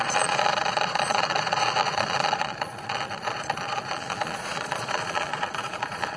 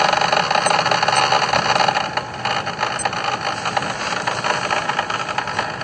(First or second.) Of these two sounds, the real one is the second